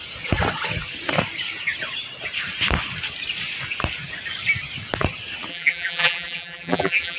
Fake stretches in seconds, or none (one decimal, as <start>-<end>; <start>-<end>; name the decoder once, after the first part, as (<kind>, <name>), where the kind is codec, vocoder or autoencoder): 5.5-7.2 (vocoder, BigVGAN v2)